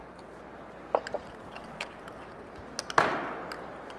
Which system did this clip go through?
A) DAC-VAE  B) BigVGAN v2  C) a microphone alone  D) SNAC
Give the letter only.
C